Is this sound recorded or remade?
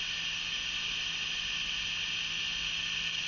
recorded